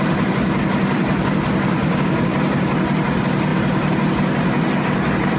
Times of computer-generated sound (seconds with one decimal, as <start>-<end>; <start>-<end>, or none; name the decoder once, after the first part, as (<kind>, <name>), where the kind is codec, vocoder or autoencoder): 1.8-2.3 (codec, DAC)